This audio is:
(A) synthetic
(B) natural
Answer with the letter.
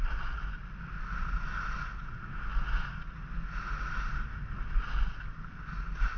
B